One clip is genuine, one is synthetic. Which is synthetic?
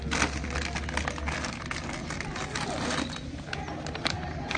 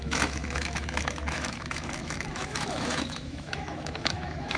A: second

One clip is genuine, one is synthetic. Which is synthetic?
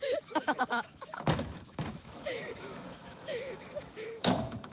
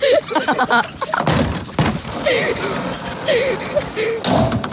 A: first